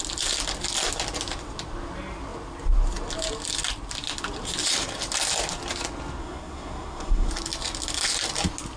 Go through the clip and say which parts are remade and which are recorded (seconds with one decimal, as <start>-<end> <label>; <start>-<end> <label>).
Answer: 0.0-6.2 recorded; 6.2-7.3 remade; 7.3-8.8 recorded

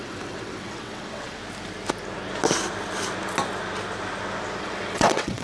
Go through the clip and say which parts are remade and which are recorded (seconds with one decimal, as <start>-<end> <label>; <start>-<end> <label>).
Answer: 0.0-1.4 remade; 1.4-4.6 recorded; 4.6-5.4 remade